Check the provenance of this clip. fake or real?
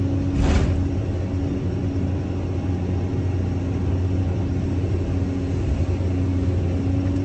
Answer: real